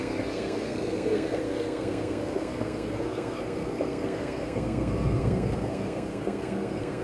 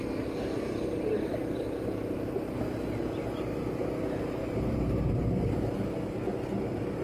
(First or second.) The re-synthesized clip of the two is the first